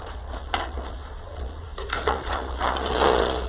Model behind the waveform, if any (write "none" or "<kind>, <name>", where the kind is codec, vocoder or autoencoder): vocoder, Vocos